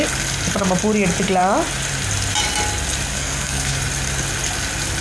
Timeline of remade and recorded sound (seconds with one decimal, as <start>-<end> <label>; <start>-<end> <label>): 0.0-3.1 recorded; 3.1-3.8 remade; 3.8-5.0 recorded

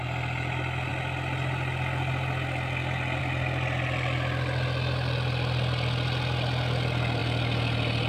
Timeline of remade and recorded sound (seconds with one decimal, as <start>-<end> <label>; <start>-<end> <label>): 0.0-8.1 recorded

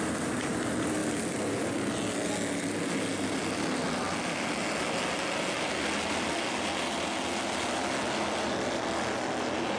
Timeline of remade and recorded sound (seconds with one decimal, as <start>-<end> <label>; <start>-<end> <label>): 0.0-9.8 recorded

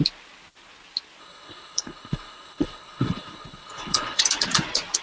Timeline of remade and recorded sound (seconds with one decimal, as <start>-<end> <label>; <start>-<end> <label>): 0.0-1.2 recorded; 1.2-4.2 remade; 4.2-5.0 recorded

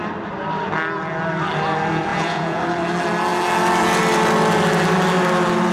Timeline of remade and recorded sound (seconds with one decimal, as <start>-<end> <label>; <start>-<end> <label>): 0.0-2.1 recorded; 2.1-2.6 remade; 2.6-5.7 recorded

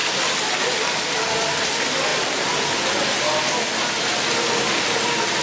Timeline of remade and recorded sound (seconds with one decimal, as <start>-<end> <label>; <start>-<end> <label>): 0.0-5.4 recorded